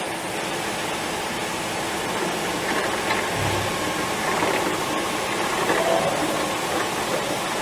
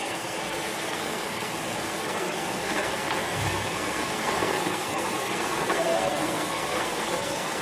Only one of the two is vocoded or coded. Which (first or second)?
second